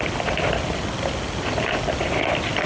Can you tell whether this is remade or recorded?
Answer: recorded